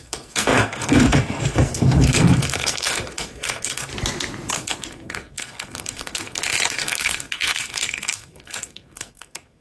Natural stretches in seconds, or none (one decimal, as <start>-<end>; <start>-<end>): 3.9-4.5